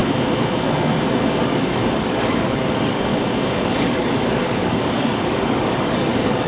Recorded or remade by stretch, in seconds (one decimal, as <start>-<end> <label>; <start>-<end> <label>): 0.0-1.4 recorded; 1.4-3.1 remade; 3.1-3.7 recorded; 3.7-6.5 remade